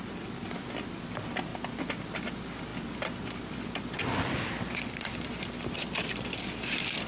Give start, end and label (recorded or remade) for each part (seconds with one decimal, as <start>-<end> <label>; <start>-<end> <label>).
0.0-7.1 recorded